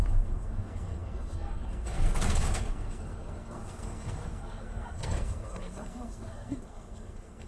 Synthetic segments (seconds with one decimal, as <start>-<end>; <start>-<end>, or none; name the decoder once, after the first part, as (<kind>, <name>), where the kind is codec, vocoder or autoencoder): 0.0-7.5 (codec, SNAC)